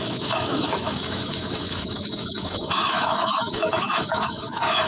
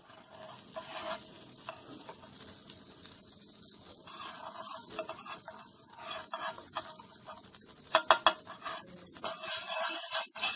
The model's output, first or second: first